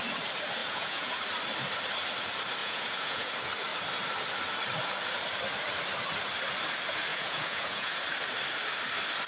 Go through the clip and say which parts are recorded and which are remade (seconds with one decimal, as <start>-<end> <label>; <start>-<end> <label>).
0.0-0.6 recorded; 0.6-1.2 remade; 1.2-2.6 recorded; 2.6-3.3 remade; 3.3-7.1 recorded; 7.1-8.0 remade; 8.0-9.3 recorded